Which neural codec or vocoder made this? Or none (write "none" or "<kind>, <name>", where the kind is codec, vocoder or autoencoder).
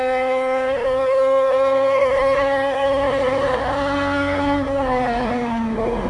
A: codec, SNAC